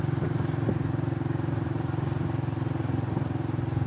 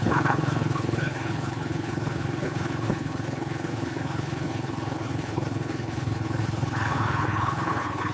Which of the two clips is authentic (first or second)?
first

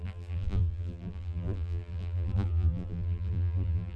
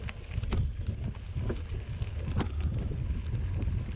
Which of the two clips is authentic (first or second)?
second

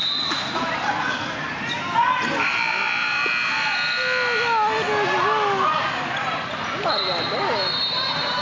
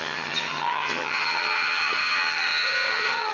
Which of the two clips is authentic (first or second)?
first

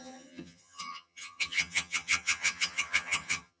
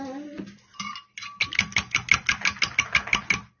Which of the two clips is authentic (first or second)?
second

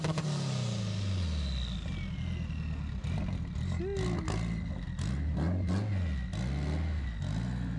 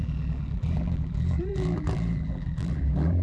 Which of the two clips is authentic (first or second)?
first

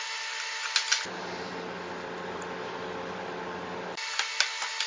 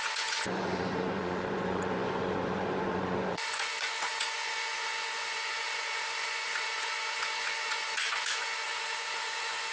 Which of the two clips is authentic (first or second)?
first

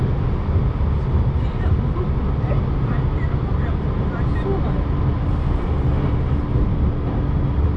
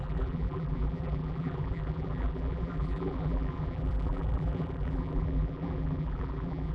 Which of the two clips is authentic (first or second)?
first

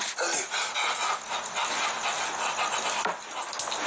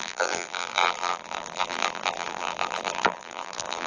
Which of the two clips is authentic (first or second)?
first